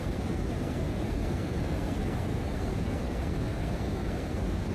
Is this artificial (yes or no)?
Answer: yes